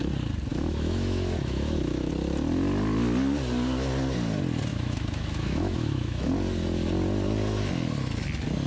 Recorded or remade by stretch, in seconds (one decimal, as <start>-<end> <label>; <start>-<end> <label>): 0.0-0.5 recorded; 0.5-2.1 remade; 2.1-4.7 recorded; 4.7-6.3 remade; 6.3-8.7 recorded